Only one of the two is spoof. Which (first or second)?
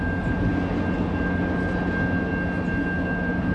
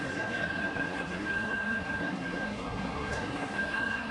second